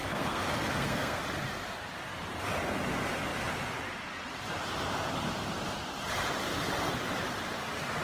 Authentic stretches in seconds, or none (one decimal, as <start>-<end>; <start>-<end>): 1.2-8.0